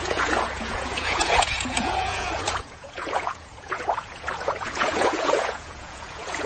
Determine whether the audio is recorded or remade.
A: remade